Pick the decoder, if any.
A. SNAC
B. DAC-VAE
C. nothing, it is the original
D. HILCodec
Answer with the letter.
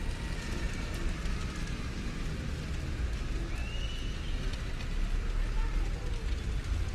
C